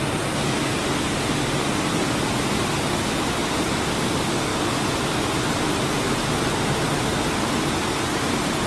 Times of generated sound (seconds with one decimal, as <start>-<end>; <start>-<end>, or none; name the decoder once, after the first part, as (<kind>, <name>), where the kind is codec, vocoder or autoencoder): none